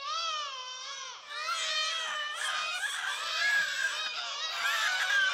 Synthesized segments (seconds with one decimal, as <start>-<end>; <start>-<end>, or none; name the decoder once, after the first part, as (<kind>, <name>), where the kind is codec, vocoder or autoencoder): 0.6-1.3 (vocoder, Vocos)